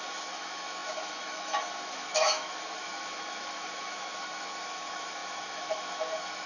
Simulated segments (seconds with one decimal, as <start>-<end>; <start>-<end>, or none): 0.0-6.5